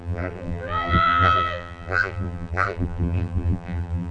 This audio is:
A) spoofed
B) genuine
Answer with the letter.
A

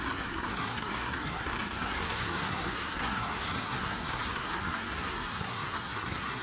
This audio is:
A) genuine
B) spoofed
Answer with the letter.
B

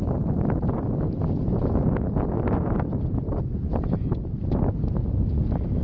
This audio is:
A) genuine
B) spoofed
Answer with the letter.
A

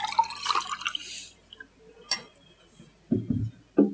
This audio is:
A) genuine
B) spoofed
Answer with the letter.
A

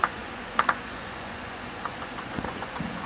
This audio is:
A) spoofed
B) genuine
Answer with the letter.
A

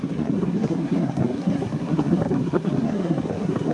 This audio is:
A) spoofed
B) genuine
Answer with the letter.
A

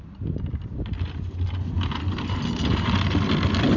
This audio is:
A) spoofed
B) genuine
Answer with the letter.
B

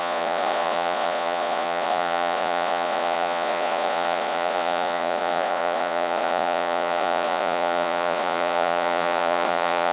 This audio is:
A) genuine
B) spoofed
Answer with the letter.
B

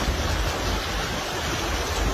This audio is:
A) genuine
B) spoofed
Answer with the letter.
A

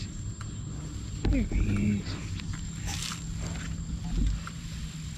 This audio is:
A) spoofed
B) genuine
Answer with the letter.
B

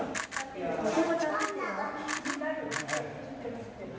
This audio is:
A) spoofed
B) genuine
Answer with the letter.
B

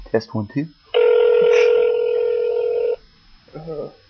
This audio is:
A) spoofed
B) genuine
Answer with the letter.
B